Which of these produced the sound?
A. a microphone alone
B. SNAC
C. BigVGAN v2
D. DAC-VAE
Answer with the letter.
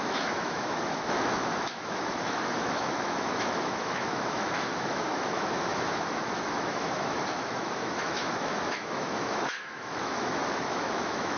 D